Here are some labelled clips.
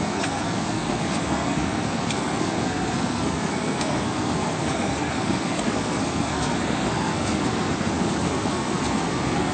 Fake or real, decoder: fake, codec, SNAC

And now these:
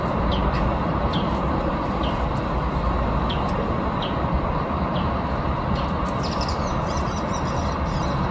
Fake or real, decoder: real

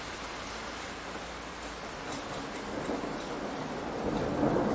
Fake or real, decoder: real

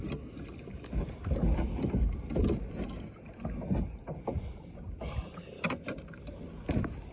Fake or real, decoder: real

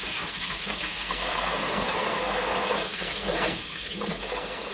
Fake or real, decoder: fake, codec, SNAC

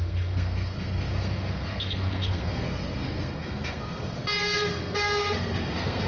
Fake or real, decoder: fake, codec, SNAC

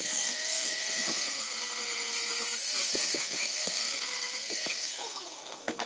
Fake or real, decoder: fake, codec, SNAC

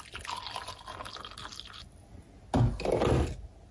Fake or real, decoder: real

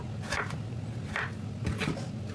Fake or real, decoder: real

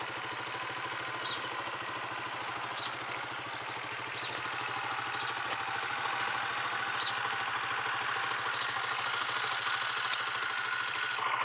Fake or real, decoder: real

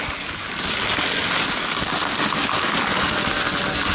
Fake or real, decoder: real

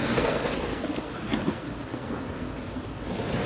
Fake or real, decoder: fake, codec, SNAC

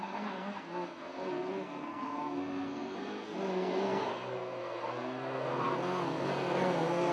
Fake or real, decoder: fake, codec, SNAC